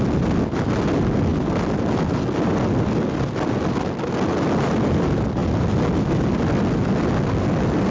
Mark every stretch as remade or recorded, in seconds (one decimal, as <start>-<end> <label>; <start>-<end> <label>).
0.0-7.9 recorded